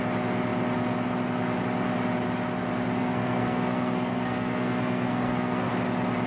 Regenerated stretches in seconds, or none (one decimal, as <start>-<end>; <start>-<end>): 3.0-5.7